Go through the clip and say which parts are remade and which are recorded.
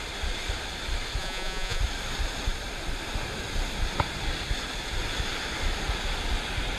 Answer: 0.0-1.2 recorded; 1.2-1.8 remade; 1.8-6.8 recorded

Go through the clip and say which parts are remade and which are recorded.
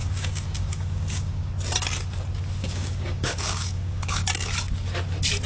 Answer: 0.0-1.5 remade; 1.5-2.6 recorded; 2.6-4.3 remade; 4.3-5.5 recorded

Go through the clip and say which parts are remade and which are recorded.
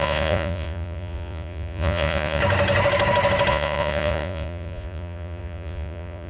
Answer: 0.0-2.4 remade; 2.4-3.5 recorded; 3.5-6.3 remade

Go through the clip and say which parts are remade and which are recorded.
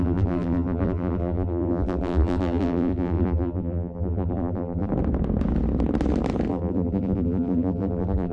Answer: 0.0-4.9 remade; 4.9-6.5 recorded; 6.5-8.3 remade